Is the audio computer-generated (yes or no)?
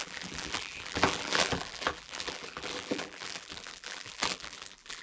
yes